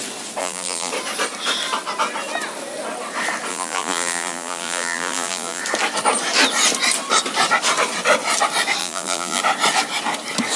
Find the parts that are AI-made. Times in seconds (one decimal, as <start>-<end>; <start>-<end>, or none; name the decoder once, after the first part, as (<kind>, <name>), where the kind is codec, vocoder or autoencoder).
0.4-0.9 (vocoder, BigVGAN v2); 3.5-5.6; 8.8-9.4